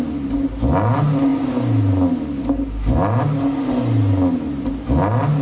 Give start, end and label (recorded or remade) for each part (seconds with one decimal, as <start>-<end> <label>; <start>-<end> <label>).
0.0-5.4 recorded